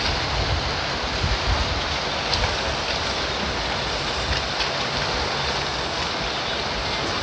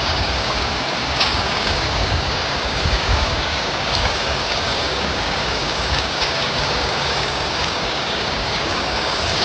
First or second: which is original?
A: first